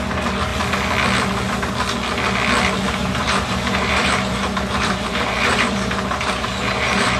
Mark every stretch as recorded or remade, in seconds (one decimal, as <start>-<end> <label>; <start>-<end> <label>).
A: 0.0-3.0 recorded; 3.0-7.2 remade